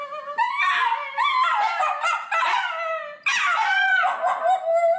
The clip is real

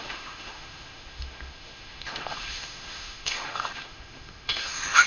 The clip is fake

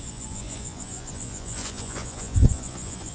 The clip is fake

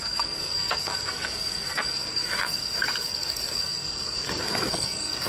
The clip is fake